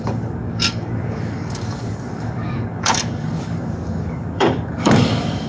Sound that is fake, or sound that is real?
fake